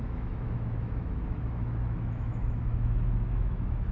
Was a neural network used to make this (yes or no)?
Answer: yes